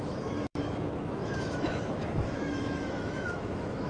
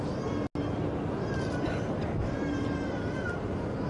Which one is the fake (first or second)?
first